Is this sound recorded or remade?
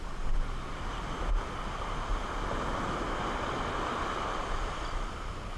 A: recorded